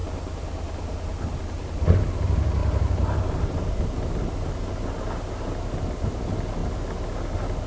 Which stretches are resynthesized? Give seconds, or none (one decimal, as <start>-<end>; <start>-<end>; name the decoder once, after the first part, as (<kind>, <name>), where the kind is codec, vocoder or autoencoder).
none